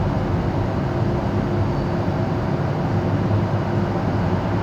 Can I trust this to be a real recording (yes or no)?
yes